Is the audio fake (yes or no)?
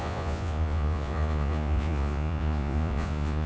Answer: yes